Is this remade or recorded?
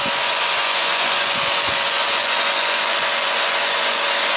remade